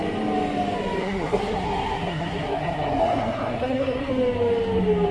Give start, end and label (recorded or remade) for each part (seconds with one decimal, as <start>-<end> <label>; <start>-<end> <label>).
0.0-1.0 recorded; 1.0-4.1 remade; 4.1-5.1 recorded

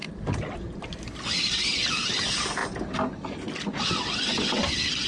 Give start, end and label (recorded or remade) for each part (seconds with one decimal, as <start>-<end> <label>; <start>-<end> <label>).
0.0-5.1 recorded

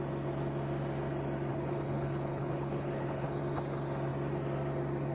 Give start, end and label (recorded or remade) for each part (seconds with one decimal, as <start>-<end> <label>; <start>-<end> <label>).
0.0-1.5 recorded; 1.5-3.4 remade; 3.4-5.1 recorded

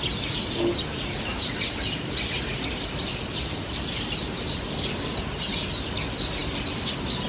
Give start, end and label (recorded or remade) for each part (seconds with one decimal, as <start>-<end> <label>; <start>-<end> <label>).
0.0-1.3 recorded; 1.3-5.2 remade; 5.2-7.3 recorded

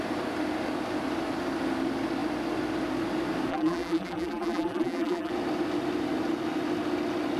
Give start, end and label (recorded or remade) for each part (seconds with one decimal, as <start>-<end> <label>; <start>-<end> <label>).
0.0-3.5 recorded; 3.5-5.3 remade; 5.3-7.4 recorded